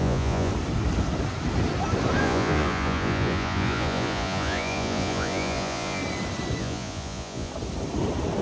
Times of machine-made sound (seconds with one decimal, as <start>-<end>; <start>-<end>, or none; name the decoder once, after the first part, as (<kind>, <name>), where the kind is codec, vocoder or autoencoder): 0.0-0.5 (vocoder, Vocos); 2.2-6.0; 6.6-7.5